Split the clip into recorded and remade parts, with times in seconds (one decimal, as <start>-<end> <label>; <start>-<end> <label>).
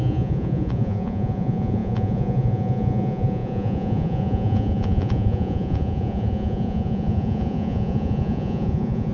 0.0-9.1 remade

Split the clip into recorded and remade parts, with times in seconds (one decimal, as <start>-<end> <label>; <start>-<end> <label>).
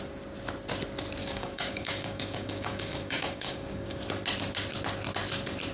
0.0-1.2 recorded; 1.2-4.0 remade; 4.0-5.7 recorded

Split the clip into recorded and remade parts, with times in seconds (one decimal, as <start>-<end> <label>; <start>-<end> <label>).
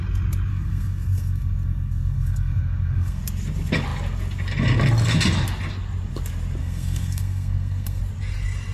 0.0-0.5 recorded; 0.5-3.2 remade; 3.2-6.6 recorded; 6.6-8.0 remade; 8.0-8.7 recorded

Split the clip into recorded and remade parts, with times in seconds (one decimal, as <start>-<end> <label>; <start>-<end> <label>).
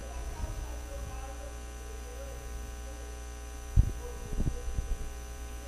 0.0-5.7 recorded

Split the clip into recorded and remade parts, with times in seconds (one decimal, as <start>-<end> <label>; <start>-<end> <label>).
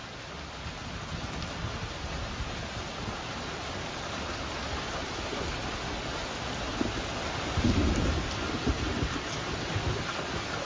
0.0-10.6 recorded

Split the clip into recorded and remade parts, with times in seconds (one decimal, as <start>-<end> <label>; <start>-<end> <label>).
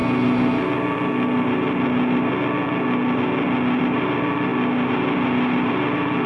0.0-6.3 recorded